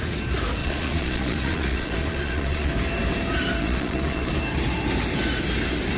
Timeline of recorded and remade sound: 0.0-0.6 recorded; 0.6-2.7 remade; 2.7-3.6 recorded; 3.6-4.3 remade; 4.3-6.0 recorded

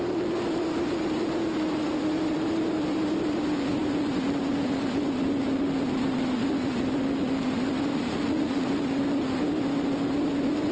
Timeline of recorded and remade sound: 0.0-7.9 recorded; 7.9-8.7 remade; 8.7-10.7 recorded

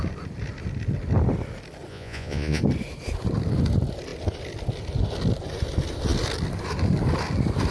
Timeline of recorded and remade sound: 0.0-1.9 recorded; 1.9-2.6 remade; 2.6-7.7 recorded